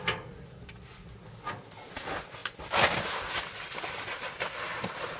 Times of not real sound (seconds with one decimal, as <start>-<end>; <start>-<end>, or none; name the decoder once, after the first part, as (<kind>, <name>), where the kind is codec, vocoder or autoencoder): none